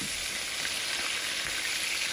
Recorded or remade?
recorded